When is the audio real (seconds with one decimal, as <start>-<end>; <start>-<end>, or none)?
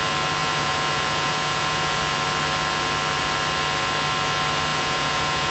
0.0-0.4; 2.0-4.7